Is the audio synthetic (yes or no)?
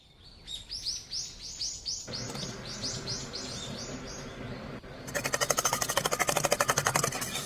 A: no